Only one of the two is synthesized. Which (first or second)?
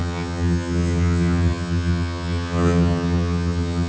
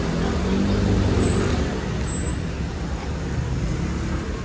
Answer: first